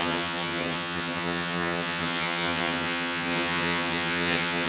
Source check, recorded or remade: remade